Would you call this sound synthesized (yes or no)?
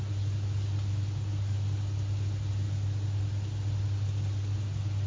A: no